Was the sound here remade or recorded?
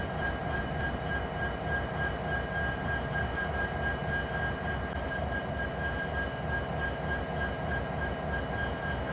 recorded